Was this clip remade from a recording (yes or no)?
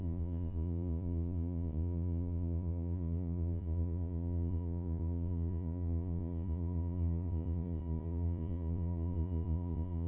yes